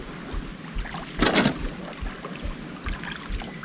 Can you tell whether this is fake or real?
real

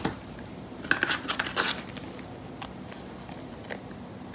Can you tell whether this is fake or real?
real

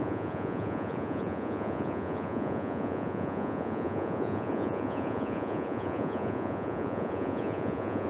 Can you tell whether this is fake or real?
fake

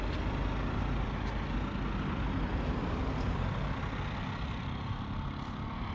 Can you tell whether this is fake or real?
real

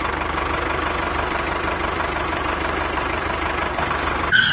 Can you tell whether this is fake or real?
fake